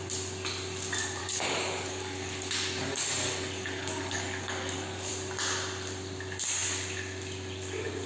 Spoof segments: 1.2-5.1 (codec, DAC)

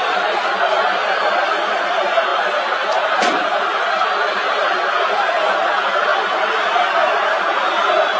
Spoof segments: none

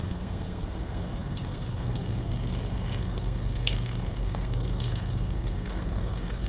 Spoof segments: 0.0-6.5 (codec, SNAC)

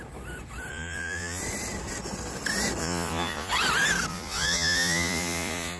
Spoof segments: 0.7-1.4 (vocoder, Vocos); 2.8-3.5; 4.1-5.8

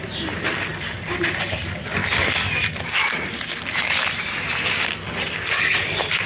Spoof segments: 0.0-2.0 (vocoder, BigVGAN v2); 5.8-6.3